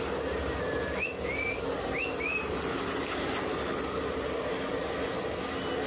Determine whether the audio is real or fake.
real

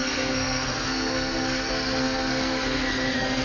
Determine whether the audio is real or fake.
fake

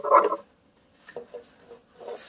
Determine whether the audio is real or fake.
real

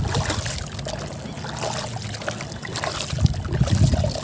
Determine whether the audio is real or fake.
real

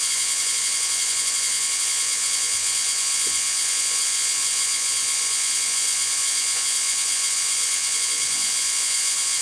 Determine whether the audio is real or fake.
fake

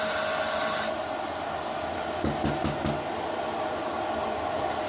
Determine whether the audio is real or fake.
real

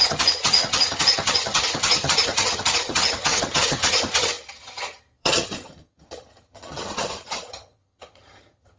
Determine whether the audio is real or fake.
fake